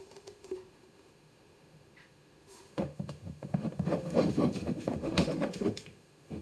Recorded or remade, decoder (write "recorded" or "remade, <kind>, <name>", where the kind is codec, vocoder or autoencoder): remade, autoencoder, DAC-VAE